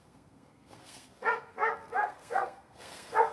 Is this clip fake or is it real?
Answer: fake